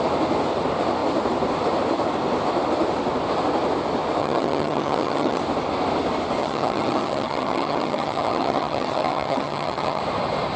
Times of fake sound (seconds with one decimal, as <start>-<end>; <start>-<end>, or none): 4.2-5.4; 6.4-10.0